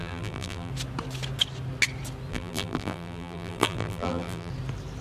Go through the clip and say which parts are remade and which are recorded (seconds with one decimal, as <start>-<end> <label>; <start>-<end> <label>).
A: 0.0-0.7 remade; 0.7-2.3 recorded; 2.3-4.5 remade; 4.5-5.0 recorded